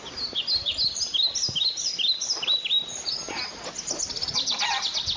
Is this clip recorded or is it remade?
recorded